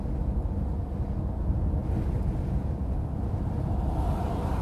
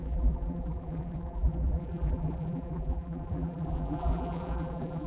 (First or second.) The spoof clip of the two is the second